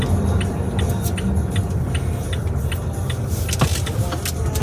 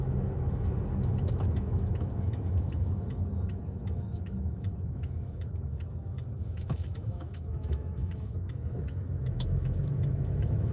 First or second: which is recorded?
first